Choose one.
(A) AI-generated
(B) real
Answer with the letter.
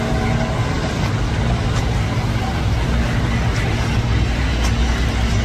B